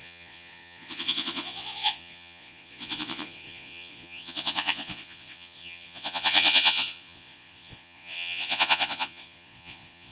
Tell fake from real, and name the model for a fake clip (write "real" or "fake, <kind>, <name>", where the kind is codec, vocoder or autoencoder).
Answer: fake, vocoder, Vocos